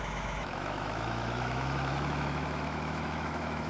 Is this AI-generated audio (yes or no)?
yes